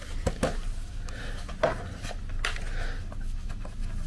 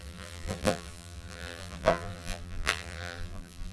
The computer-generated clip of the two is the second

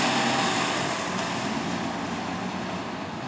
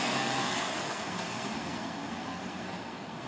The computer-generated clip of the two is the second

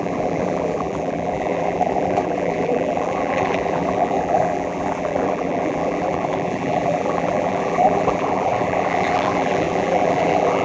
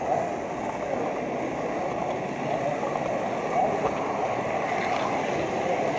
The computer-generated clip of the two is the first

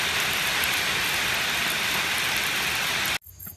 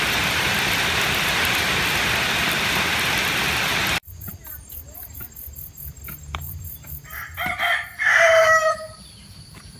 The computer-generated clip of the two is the second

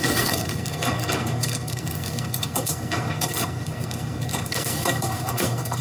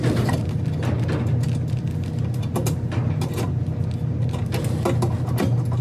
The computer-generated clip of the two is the first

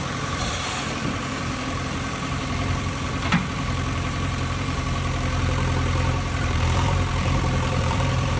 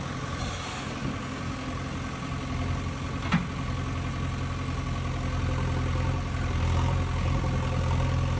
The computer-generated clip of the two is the first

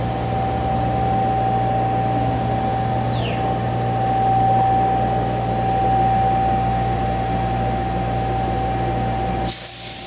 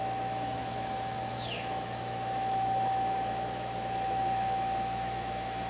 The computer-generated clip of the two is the second